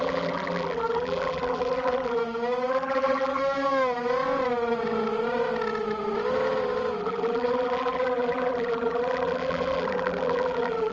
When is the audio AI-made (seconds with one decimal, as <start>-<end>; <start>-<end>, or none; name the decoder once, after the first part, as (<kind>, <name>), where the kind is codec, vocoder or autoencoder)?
0.0-2.2 (vocoder, BigVGAN v2); 2.7-3.4; 7.0-10.9